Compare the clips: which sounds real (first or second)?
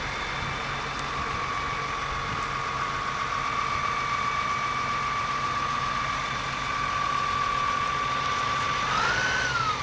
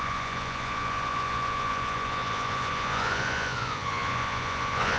first